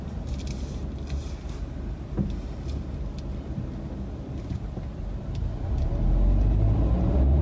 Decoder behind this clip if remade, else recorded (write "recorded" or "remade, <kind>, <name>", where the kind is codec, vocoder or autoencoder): recorded